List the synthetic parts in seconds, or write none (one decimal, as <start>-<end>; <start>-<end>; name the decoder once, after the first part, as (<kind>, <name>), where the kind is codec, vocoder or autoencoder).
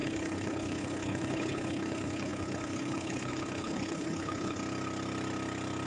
0.0-4.6 (codec, HILCodec)